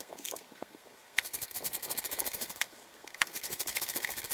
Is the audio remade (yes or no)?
yes